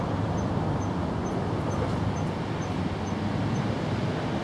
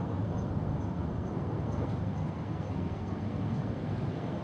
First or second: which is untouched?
first